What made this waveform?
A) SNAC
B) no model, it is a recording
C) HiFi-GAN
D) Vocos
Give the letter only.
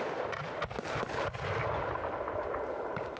B